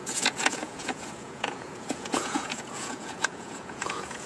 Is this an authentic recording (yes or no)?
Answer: no